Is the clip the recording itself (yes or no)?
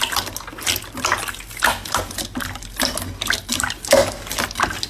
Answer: yes